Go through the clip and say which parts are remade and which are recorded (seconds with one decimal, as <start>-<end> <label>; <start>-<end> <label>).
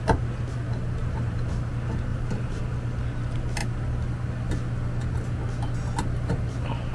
0.0-1.0 recorded; 1.0-1.7 remade; 1.7-2.1 recorded; 2.1-2.6 remade; 2.6-6.9 recorded